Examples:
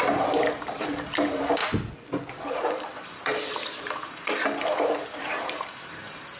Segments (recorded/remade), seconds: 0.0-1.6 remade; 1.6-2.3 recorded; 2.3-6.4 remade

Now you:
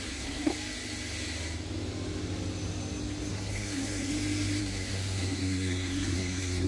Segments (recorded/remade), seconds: 0.0-0.5 remade; 0.5-3.3 recorded; 3.3-4.1 remade; 4.1-4.6 recorded; 4.6-6.7 remade

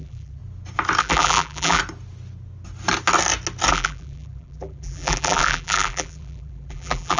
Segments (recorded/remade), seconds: 0.0-0.4 remade; 0.4-1.0 recorded; 1.0-1.8 remade; 1.8-3.7 recorded; 3.7-7.2 remade